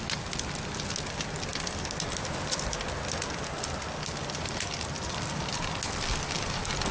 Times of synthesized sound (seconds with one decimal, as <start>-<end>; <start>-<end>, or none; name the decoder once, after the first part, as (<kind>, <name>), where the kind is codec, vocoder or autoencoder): 1.5-5.6 (vocoder, BigVGAN v2)